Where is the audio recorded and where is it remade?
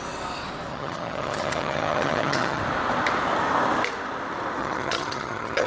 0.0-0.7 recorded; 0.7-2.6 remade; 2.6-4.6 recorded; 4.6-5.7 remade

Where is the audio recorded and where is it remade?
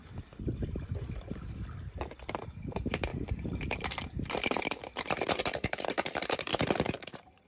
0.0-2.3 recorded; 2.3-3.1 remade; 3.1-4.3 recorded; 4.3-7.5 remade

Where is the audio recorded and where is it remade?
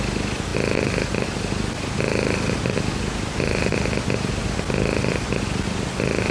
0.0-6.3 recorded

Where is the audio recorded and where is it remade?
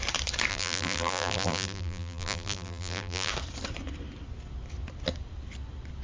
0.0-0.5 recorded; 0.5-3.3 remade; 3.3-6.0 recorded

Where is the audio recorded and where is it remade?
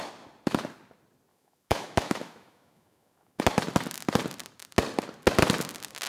0.0-1.3 recorded; 1.3-3.4 remade; 3.4-6.1 recorded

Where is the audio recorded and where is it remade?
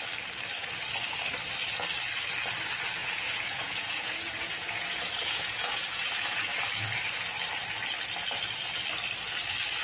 0.0-3.0 recorded; 3.0-6.6 remade; 6.6-9.8 recorded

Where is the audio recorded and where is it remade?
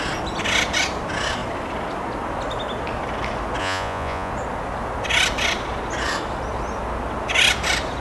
0.0-3.6 recorded; 3.6-4.3 remade; 4.3-8.0 recorded